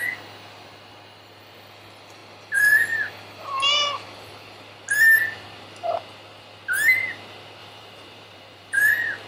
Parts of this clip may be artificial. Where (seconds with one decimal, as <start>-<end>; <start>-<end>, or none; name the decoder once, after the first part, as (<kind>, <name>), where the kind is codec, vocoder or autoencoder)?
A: 7.6-8.9 (vocoder, BigVGAN v2)